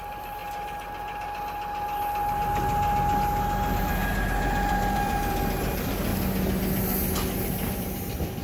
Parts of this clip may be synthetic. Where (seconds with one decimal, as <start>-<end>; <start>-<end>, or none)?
0.0-0.4; 3.8-6.1; 7.8-8.4